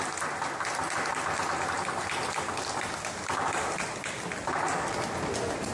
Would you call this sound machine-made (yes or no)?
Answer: no